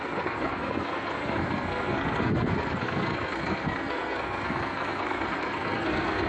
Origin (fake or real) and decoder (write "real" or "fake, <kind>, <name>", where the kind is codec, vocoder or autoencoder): fake, codec, SNAC